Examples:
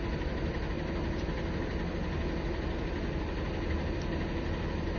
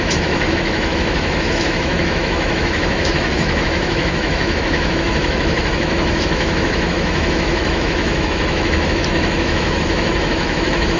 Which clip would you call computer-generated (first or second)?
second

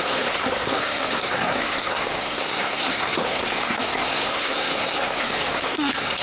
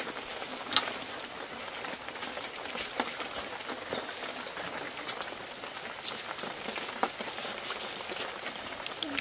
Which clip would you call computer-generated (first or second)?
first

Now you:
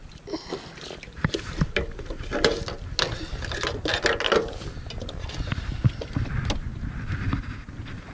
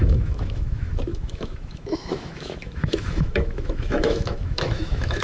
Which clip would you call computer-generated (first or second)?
second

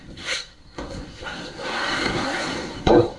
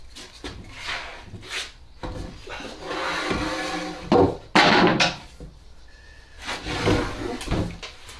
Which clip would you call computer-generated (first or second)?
first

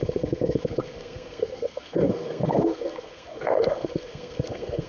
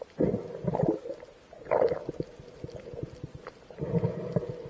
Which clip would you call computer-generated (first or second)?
first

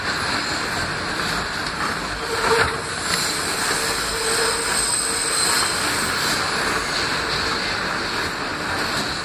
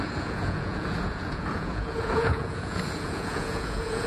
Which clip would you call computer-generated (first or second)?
second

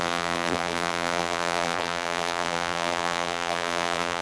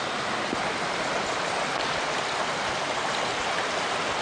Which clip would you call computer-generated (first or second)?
first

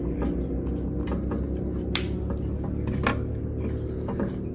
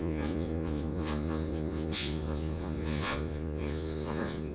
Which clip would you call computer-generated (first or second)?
second